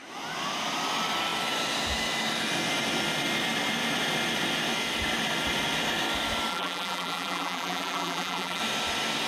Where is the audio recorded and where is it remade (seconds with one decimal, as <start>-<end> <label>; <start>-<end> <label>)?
0.0-6.5 recorded; 6.5-8.6 remade; 8.6-9.3 recorded